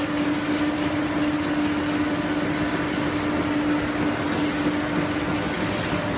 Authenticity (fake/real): real